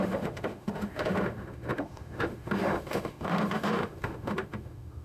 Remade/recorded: remade